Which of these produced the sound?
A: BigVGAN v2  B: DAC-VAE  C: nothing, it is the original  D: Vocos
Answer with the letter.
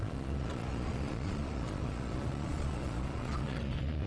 D